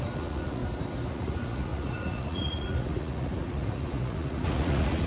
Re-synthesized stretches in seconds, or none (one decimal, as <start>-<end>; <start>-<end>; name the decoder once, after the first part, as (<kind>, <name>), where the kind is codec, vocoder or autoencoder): 0.0-0.6 (vocoder, Vocos); 1.1-5.1

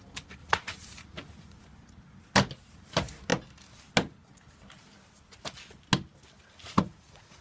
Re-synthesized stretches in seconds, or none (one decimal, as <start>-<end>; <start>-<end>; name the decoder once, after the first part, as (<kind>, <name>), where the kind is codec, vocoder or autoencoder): 0.4-1.6 (vocoder, Vocos); 6.6-7.4

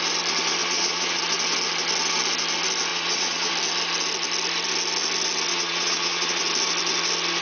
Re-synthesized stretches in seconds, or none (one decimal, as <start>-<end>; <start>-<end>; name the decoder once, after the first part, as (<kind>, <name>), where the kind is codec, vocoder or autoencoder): 0.6-1.2 (vocoder, Vocos); 2.9-3.5; 5.5-6.4